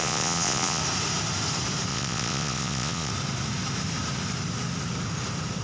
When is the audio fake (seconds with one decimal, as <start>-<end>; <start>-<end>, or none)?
0.0-0.8; 1.9-3.1